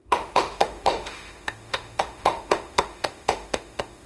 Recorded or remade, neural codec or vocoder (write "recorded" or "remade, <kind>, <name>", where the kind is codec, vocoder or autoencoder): remade, autoencoder, DAC-VAE